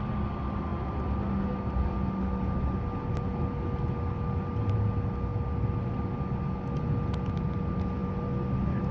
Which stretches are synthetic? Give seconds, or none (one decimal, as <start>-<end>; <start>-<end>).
none